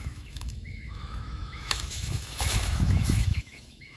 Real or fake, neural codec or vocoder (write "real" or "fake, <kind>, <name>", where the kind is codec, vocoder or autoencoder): fake, autoencoder, DAC-VAE